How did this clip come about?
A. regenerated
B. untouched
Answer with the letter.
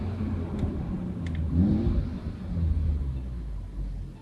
B